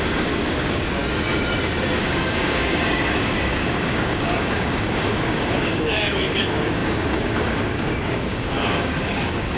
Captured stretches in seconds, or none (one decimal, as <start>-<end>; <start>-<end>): 1.0-2.0